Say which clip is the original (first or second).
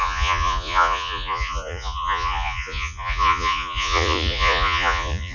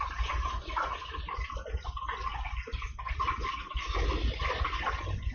second